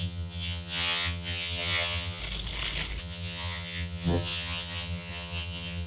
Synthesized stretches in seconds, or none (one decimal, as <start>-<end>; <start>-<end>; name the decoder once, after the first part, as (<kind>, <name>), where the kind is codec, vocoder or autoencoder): 0.0-2.2 (vocoder, HiFi-GAN); 3.0-5.9